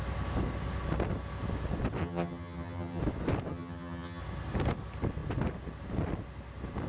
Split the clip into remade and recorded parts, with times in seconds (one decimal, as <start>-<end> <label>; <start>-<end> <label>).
0.0-2.0 recorded; 2.0-3.0 remade; 3.0-3.5 recorded; 3.5-4.2 remade; 4.2-6.9 recorded